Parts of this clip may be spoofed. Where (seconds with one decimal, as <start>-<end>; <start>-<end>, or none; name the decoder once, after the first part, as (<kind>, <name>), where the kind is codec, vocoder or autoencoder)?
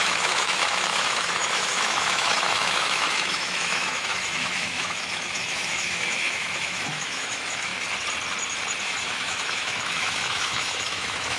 0.0-7.7 (autoencoder, DAC-VAE); 8.8-11.4